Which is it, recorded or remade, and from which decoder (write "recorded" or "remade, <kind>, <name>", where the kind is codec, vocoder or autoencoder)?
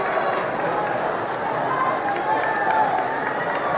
recorded